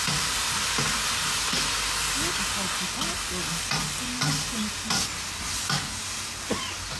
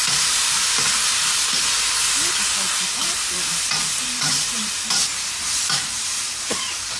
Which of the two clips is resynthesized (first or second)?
second